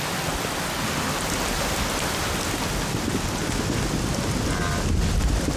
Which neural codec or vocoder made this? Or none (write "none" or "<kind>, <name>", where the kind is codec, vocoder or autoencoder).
none